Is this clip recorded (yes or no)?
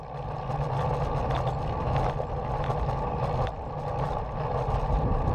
yes